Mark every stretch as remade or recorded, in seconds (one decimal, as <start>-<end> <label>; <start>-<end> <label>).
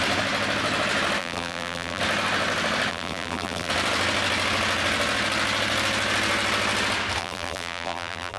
0.0-1.2 recorded; 1.2-2.0 remade; 2.0-2.9 recorded; 2.9-3.7 remade; 3.7-7.2 recorded; 7.2-8.4 remade